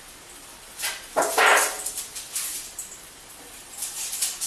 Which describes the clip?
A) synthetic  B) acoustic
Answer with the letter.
B